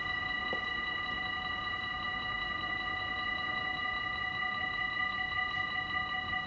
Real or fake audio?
real